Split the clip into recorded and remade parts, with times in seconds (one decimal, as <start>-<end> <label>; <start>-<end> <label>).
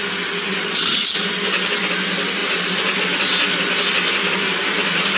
0.0-0.5 recorded; 0.5-1.0 remade; 1.0-5.2 recorded